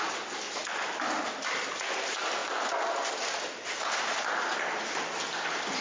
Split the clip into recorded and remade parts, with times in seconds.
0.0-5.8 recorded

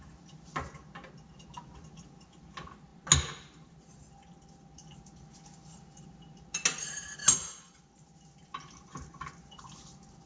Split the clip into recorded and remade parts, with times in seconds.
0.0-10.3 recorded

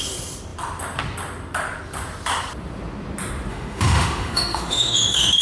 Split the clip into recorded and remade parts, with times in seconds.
0.0-3.5 recorded; 3.5-5.4 remade